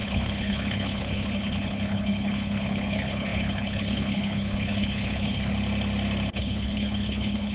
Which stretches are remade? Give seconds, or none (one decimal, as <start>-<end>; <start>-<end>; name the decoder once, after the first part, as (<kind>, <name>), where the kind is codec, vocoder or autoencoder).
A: 0.0-5.5 (codec, HILCodec); 6.3-7.5